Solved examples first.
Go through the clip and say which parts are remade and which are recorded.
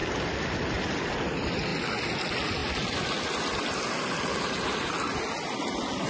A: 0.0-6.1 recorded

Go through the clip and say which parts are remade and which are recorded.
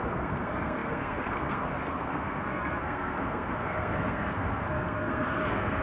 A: 0.0-5.8 remade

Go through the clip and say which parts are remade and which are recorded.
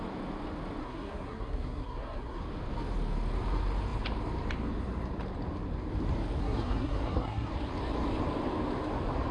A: 0.0-0.8 recorded; 0.8-2.4 remade; 2.4-6.4 recorded; 6.4-7.5 remade; 7.5-9.3 recorded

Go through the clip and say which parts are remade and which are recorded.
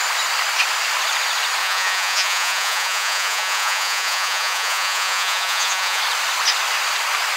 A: 0.0-1.6 recorded; 1.6-6.0 remade; 6.0-7.4 recorded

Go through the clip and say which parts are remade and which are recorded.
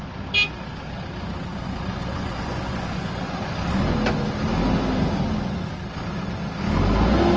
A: 0.0-1.5 recorded; 1.5-3.4 remade; 3.4-7.4 recorded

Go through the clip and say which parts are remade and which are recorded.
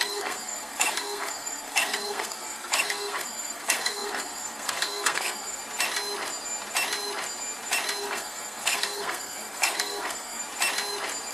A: 0.0-5.6 remade; 5.6-8.0 recorded; 8.0-10.4 remade; 10.4-11.3 recorded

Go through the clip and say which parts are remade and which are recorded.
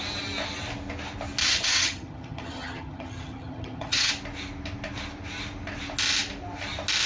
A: 0.0-1.4 recorded; 1.4-4.1 remade; 4.1-7.1 recorded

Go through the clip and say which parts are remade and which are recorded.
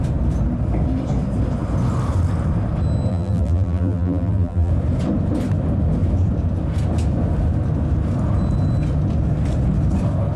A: 0.0-3.1 recorded; 3.1-4.7 remade; 4.7-10.4 recorded